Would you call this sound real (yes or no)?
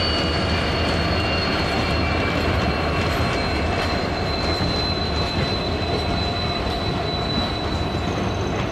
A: yes